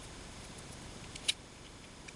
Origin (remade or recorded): recorded